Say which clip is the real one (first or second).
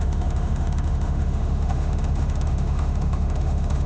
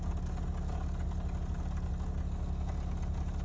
second